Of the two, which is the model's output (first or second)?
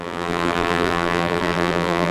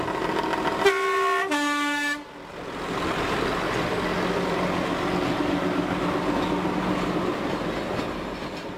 first